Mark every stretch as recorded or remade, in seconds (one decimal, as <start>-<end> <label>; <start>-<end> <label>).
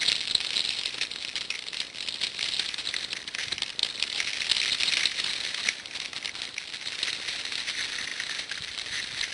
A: 0.0-8.1 recorded; 8.1-9.3 remade